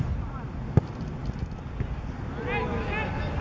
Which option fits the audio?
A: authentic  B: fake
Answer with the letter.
A